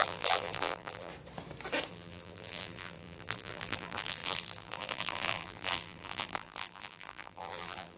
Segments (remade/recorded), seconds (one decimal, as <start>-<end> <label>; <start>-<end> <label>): 0.0-1.1 remade; 1.1-1.9 recorded; 1.9-8.0 remade